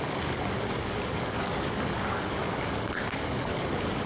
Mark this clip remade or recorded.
remade